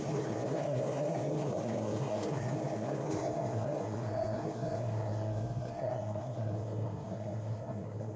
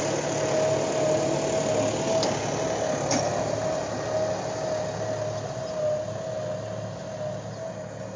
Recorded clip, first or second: second